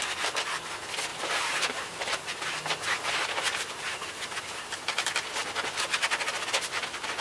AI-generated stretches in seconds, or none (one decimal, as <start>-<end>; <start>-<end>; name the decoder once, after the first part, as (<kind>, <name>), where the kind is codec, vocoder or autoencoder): 1.1-4.6 (vocoder, BigVGAN v2)